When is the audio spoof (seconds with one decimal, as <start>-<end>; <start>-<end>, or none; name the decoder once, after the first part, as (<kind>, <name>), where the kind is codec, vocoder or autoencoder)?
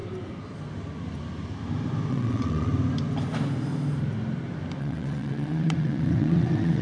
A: 2.1-2.7 (vocoder, WaveNeXt); 4.8-6.8